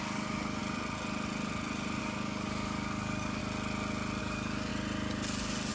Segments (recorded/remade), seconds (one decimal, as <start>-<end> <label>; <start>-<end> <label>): 0.0-0.6 remade; 0.6-2.0 recorded; 2.0-3.4 remade; 3.4-4.2 recorded; 4.2-4.7 remade; 4.7-5.7 recorded